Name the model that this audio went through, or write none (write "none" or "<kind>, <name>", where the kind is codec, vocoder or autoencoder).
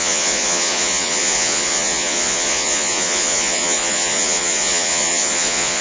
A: vocoder, Vocos